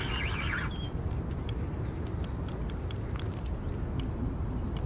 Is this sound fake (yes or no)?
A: no